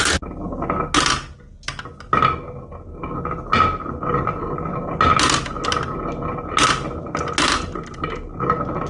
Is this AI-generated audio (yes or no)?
no